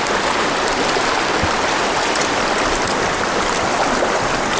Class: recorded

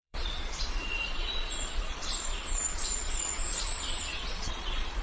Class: remade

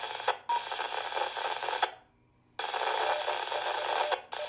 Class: recorded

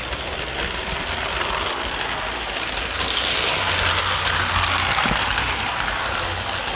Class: recorded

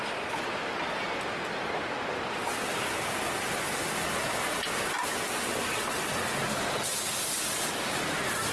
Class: recorded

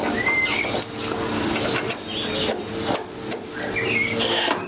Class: recorded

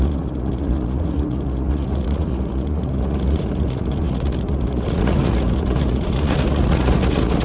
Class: remade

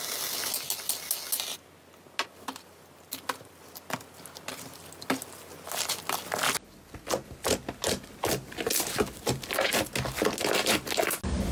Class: recorded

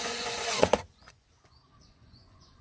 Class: remade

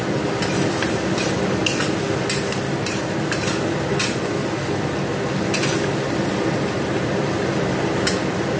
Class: recorded